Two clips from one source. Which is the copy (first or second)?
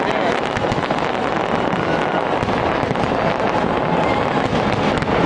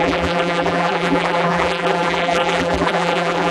second